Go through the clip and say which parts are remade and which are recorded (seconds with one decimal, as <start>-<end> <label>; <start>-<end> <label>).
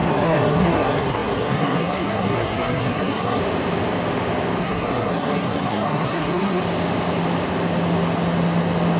0.0-3.4 remade; 3.4-4.6 recorded; 4.6-6.6 remade; 6.6-9.0 recorded